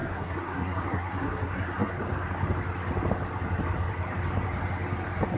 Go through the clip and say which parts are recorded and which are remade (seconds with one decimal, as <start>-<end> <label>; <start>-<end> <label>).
0.0-1.9 remade; 1.9-5.4 recorded